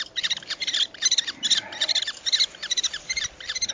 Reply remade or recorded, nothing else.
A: recorded